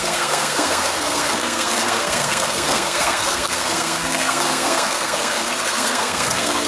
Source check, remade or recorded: remade